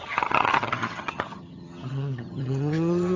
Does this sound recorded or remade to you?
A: remade